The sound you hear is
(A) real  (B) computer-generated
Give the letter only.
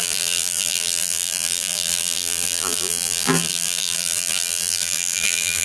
B